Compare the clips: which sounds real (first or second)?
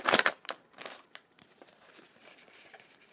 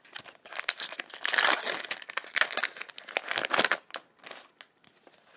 second